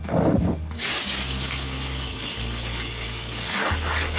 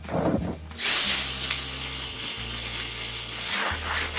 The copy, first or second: first